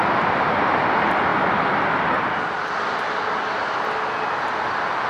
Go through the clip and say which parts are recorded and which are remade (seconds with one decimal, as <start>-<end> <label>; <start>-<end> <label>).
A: 0.0-1.3 remade; 1.3-4.4 recorded; 4.4-5.1 remade